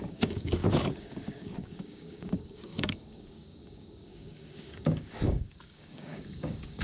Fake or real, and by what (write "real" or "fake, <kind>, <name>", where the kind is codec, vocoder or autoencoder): fake, codec, DAC